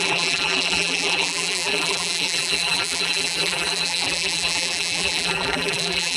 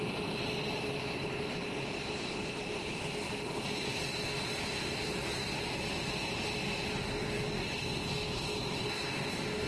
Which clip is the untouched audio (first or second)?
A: second